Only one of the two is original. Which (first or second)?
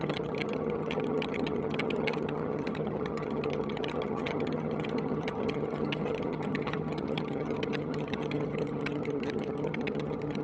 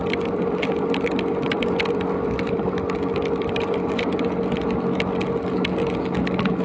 second